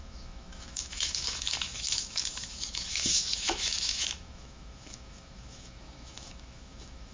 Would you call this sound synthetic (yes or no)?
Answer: yes